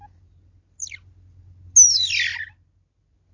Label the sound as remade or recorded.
recorded